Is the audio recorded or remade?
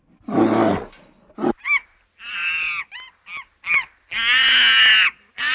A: recorded